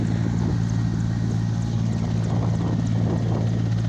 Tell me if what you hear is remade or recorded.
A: recorded